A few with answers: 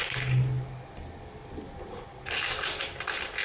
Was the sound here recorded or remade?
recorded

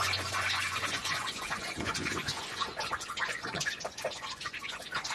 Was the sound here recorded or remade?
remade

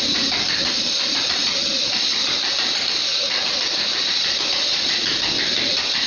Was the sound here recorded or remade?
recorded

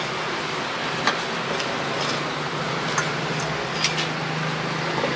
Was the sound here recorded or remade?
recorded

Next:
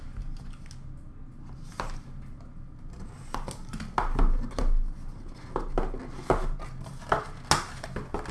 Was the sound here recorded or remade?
recorded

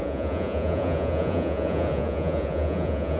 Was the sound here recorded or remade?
remade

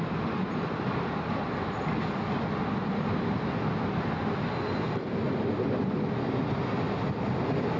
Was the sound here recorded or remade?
recorded